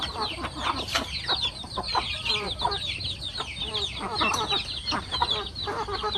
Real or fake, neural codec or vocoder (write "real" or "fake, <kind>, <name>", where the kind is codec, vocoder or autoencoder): real